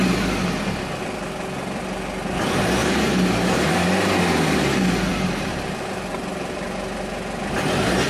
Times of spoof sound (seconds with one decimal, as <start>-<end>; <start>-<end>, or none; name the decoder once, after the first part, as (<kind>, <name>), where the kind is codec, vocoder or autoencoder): 2.8-4.2 (vocoder, BigVGAN v2)